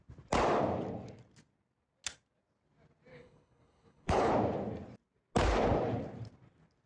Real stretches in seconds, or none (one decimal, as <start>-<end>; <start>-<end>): 0.0-3.1; 4.3-6.9

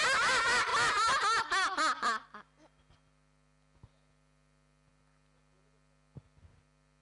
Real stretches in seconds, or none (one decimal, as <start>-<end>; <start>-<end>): 0.0-7.0

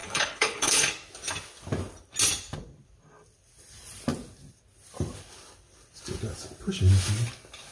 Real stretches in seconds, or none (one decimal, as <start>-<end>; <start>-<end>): 0.9-7.7

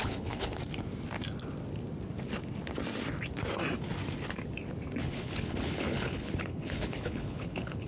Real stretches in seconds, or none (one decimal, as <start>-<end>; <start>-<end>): 0.6-5.0